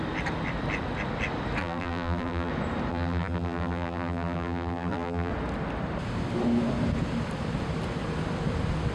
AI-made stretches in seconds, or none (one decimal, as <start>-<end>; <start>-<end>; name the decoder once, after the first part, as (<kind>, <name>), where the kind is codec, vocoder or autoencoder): 1.6-2.5 (vocoder, BigVGAN v2); 2.9-5.3